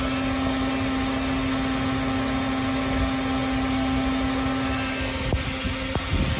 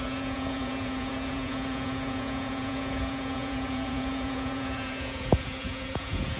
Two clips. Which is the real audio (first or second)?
first